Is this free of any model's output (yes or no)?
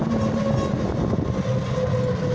yes